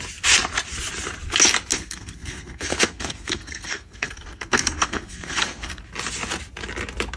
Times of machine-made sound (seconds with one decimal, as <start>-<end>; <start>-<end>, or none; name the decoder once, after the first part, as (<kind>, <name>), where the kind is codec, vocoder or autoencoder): 1.7-5.8 (codec, SNAC)